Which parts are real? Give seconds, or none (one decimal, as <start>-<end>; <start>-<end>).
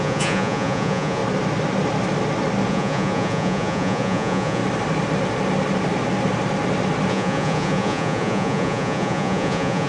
1.2-2.7; 4.6-7.1